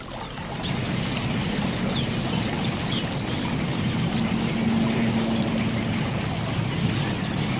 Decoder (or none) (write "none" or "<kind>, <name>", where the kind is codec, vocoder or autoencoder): none